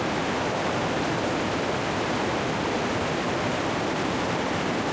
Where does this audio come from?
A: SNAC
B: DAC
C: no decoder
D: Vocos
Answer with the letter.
C